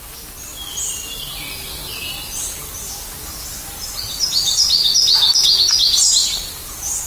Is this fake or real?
real